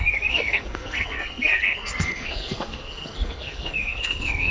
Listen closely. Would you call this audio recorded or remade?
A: remade